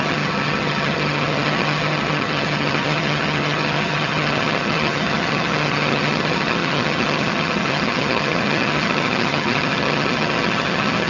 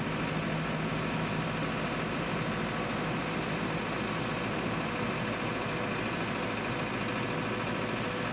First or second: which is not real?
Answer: first